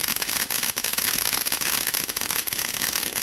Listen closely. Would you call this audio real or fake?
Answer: fake